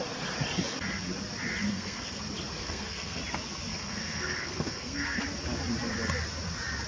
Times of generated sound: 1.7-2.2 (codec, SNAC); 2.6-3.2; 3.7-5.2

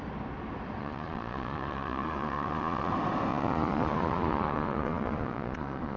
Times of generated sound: 0.8-2.9 (vocoder, Vocos); 3.3-6.0

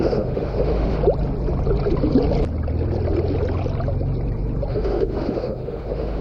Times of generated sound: 0.0-1.0 (autoencoder, DAC-VAE); 4.7-6.2